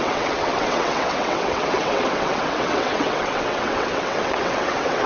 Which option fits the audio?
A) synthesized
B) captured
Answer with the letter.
A